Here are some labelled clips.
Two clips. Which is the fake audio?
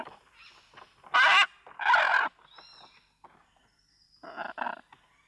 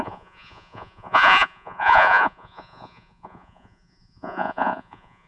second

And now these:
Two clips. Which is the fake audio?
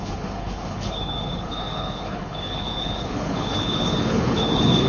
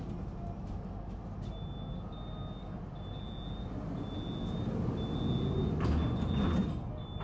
first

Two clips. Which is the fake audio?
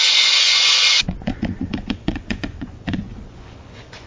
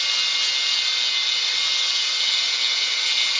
first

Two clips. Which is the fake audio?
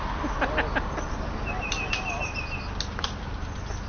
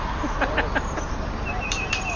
second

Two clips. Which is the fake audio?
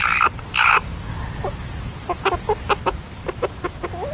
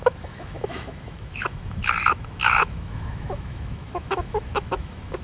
second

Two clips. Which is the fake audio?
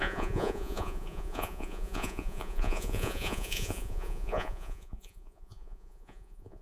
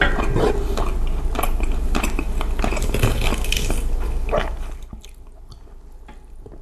first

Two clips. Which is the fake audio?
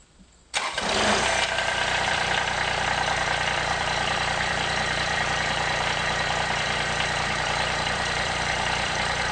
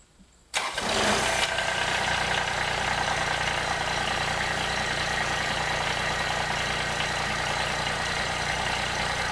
first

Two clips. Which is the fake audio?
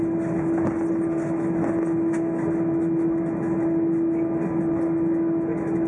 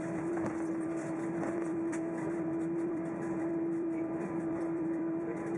second